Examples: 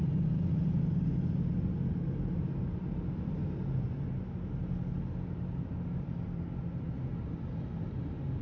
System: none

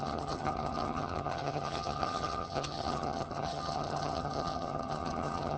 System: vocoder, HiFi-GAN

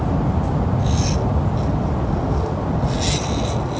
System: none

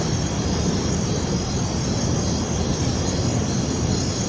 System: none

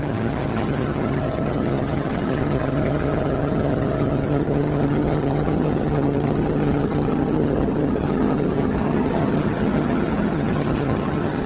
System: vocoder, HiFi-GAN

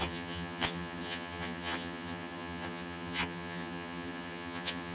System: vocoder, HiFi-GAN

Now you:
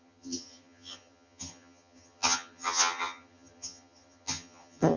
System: vocoder, HiFi-GAN